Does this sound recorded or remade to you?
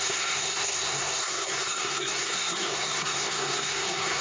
remade